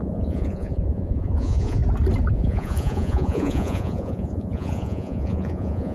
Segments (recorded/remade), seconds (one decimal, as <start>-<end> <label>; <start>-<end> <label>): 0.0-1.8 remade; 1.8-2.3 recorded; 2.3-5.9 remade